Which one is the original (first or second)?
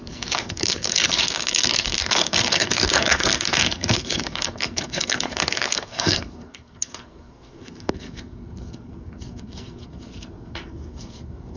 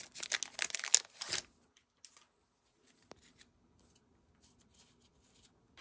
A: second